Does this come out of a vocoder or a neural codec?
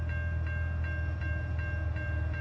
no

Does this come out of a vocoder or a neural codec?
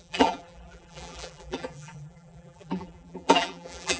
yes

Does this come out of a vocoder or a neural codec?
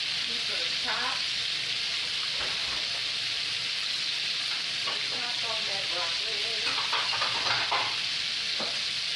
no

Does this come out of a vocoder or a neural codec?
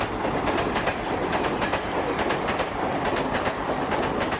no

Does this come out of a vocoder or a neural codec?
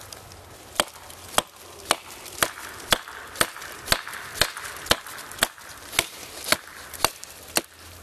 no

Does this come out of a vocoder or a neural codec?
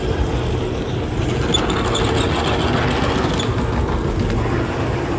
no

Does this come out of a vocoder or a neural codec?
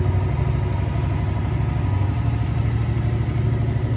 no